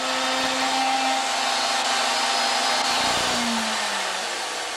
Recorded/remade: recorded